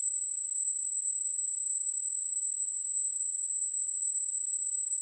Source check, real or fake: fake